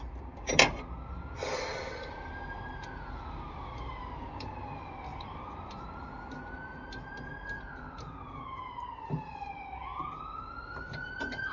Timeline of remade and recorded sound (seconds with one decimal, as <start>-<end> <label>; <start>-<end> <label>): 0.0-11.5 recorded